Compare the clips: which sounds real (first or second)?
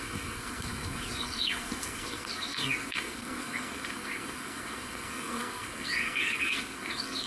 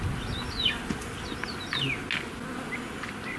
second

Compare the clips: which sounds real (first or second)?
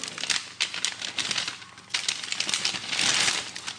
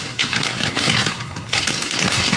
first